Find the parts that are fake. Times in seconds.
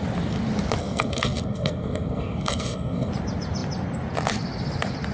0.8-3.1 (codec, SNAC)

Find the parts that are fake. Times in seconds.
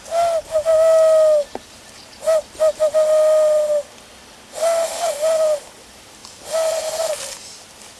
none